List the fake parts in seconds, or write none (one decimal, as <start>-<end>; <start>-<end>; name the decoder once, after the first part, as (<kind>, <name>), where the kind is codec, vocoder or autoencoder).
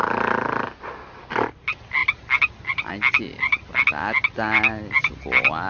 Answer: none